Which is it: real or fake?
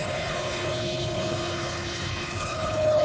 fake